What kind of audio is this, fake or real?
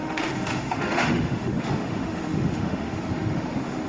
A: fake